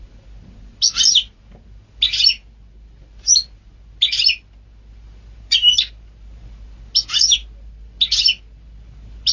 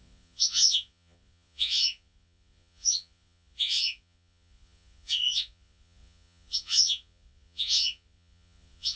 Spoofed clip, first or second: second